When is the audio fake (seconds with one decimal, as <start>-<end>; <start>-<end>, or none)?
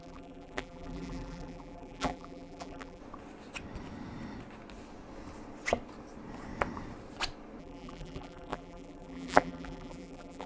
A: 0.0-3.0; 7.6-10.5